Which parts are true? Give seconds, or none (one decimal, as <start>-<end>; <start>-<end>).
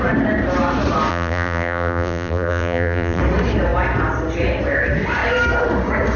0.0-1.1; 3.2-6.2